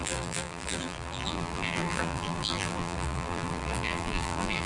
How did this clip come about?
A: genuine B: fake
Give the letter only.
B